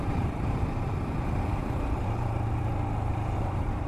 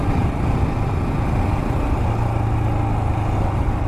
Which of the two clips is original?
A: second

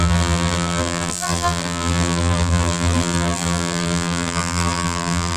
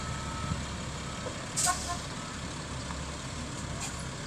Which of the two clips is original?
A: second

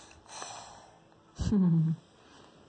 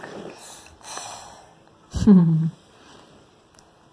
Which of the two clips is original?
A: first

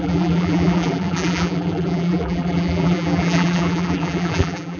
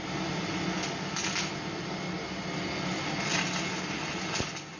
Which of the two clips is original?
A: second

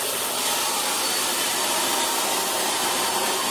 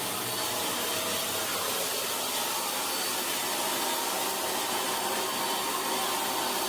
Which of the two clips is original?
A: second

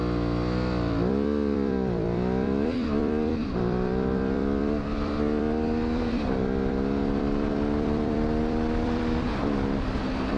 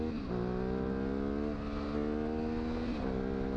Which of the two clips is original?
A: second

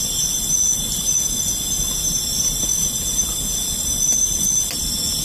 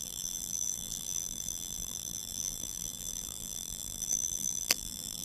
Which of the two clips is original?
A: first